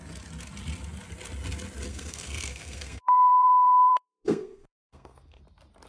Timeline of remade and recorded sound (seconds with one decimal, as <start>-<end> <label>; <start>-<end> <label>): 0.0-1.9 recorded; 1.9-5.4 remade; 5.4-5.9 recorded